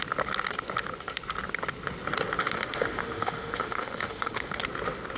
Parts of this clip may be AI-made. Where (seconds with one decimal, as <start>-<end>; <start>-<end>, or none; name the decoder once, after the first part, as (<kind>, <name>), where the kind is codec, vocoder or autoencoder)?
2.4-4.6 (autoencoder, DAC-VAE)